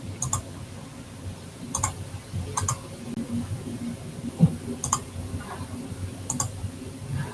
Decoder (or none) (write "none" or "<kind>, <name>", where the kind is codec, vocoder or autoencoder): none